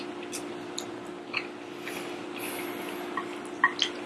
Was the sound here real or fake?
real